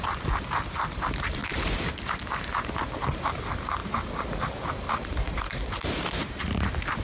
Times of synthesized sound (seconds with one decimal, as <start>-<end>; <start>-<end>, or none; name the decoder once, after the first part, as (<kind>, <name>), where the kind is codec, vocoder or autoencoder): none